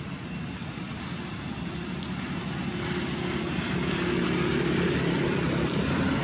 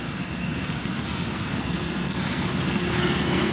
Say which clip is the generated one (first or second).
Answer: second